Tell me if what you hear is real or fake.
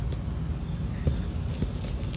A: real